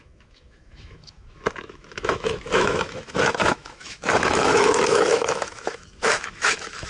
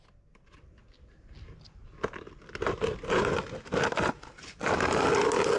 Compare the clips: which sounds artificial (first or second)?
first